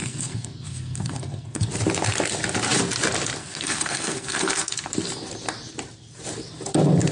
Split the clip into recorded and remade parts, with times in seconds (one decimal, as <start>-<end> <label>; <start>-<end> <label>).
0.0-1.7 remade; 1.7-3.4 recorded; 3.4-4.9 remade; 4.9-7.1 recorded